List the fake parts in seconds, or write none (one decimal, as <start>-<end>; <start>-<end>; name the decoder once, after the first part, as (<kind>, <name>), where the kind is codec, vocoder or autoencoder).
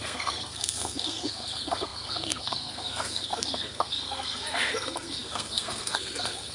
0.0-6.5 (codec, SNAC)